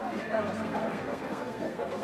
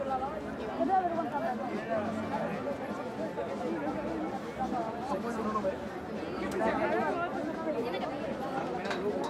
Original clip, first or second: second